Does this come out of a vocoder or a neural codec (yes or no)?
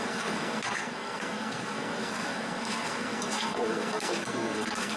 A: yes